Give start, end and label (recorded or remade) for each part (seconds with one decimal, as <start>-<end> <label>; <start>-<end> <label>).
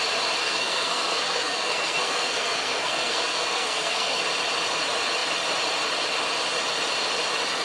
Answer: 0.0-0.4 recorded; 0.4-4.2 remade; 4.2-7.6 recorded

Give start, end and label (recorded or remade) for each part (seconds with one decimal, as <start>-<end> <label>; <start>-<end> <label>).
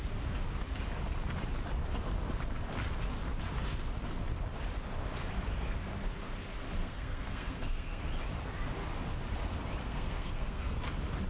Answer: 0.0-6.8 recorded; 6.8-8.0 remade; 8.0-9.8 recorded; 9.8-10.8 remade; 10.8-11.3 recorded